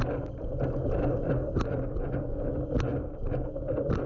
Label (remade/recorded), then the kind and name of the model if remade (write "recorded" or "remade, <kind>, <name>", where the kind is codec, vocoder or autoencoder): recorded